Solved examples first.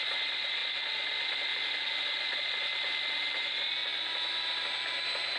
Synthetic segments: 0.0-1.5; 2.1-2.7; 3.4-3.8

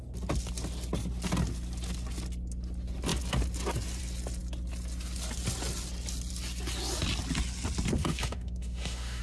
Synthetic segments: 8.0-9.2

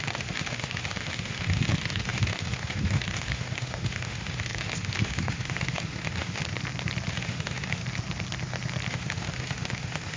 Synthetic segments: 0.0-6.4; 7.1-7.8; 8.9-10.2

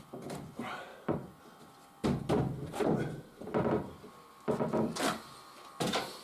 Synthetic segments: 0.9-1.4

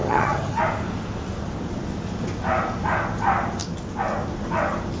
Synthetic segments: 0.0-0.6

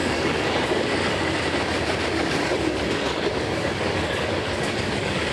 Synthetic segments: 0.0-1.4; 2.1-5.3

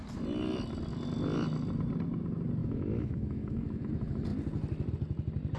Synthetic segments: 2.6-3.9

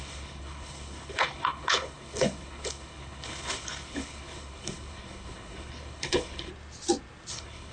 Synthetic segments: 0.0-6.5; 7.3-7.7